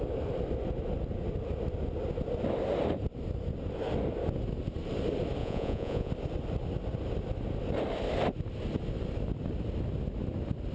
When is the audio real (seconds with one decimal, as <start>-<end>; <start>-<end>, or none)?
0.0-5.4; 6.1-10.7